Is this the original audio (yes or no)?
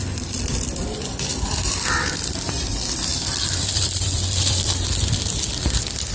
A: no